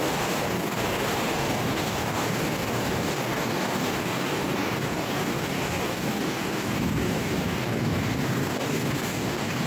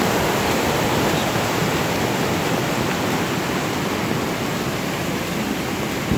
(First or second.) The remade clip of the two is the first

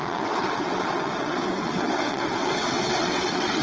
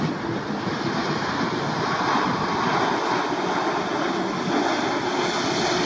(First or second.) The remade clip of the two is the first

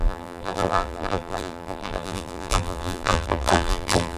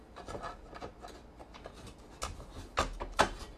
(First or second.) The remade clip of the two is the first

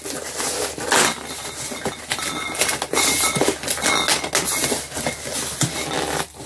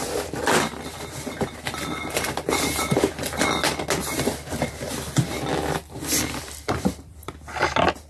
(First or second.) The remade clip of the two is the second